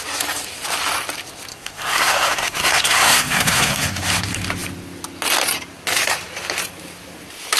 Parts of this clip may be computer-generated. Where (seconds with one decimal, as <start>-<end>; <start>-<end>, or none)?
1.5-4.1